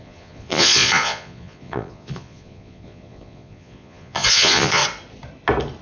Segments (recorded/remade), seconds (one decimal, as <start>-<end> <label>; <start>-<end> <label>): 0.0-4.8 remade; 4.8-5.8 recorded